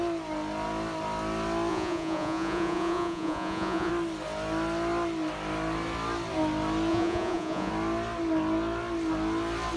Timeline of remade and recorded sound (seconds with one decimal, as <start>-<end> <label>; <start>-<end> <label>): 0.0-1.7 recorded; 1.7-3.9 remade; 3.9-6.9 recorded; 6.9-7.7 remade; 7.7-9.8 recorded